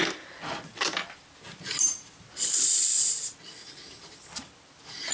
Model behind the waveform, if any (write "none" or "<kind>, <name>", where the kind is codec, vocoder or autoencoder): none